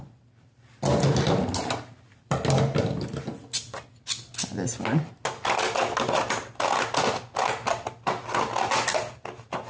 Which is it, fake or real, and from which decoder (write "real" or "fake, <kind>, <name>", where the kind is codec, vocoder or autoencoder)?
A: real